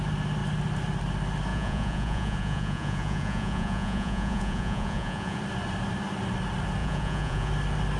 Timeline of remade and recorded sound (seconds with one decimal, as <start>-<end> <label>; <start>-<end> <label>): 0.0-1.5 recorded; 1.5-5.4 remade; 5.4-6.8 recorded; 6.8-7.5 remade; 7.5-8.0 recorded